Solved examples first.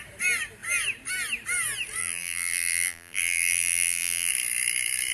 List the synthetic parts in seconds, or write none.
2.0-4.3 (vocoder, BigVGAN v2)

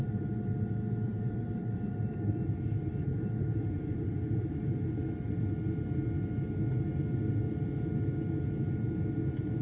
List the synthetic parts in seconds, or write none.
1.1-5.0 (vocoder, BigVGAN v2)

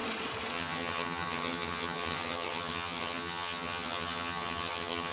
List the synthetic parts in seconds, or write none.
0.5-5.1 (vocoder, HiFi-GAN)

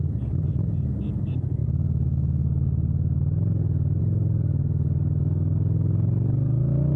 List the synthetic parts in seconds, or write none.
none